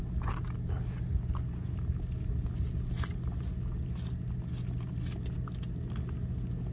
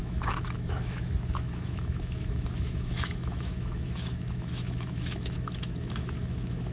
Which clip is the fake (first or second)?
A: second